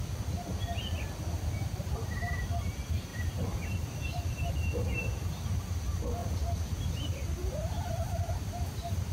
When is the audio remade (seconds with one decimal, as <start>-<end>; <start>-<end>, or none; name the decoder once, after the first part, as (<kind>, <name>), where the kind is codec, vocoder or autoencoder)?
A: 3.1-4.5 (vocoder, BigVGAN v2)